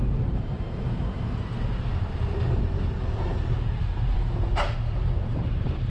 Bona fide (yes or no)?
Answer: no